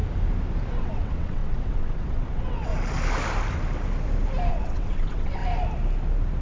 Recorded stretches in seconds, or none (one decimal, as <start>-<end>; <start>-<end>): 0.0-0.7; 2.7-4.5; 5.4-6.4